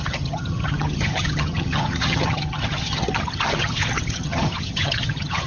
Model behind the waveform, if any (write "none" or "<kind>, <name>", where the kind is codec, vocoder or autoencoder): vocoder, HiFi-GAN